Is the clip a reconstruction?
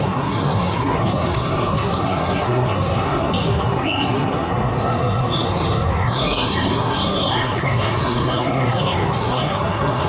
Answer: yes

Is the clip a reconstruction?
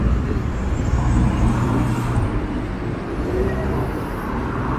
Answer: yes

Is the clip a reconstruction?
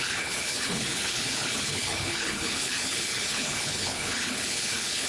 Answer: yes